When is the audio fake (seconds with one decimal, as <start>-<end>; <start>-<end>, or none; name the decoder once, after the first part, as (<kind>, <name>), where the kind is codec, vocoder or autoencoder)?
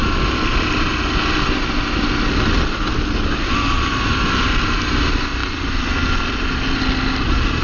none